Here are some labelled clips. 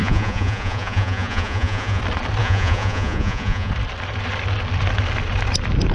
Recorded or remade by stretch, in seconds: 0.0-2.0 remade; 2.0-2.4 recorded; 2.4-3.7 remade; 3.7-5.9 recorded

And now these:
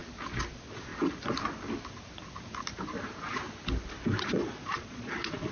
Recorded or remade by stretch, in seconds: 0.0-0.5 recorded; 0.5-0.9 remade; 0.9-4.2 recorded; 4.2-5.5 remade

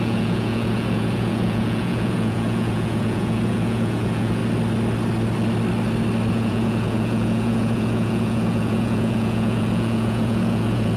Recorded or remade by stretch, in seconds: 0.0-4.4 remade; 4.4-6.3 recorded; 6.3-11.0 remade

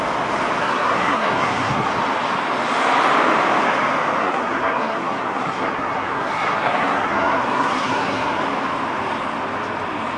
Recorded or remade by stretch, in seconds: 0.0-0.6 recorded; 0.6-1.9 remade; 1.9-4.2 recorded; 4.2-8.4 remade; 8.4-10.2 recorded

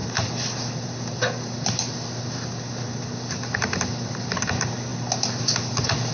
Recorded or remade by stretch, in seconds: 0.0-6.1 recorded

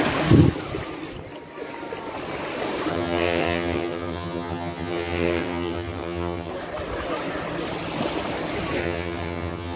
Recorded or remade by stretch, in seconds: 0.0-2.9 recorded; 2.9-6.5 remade; 6.5-8.8 recorded; 8.8-9.8 remade